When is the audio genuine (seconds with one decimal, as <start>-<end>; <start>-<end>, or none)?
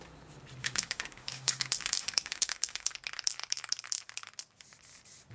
0.0-0.6; 2.9-5.3